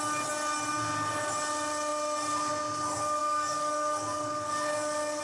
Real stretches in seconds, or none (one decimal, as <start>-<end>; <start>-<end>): 0.0-3.2